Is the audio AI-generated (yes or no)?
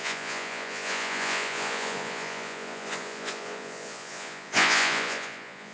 yes